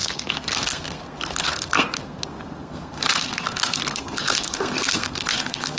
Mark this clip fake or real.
fake